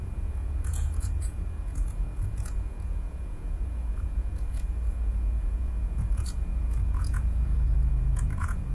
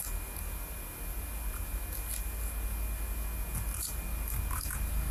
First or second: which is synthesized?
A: first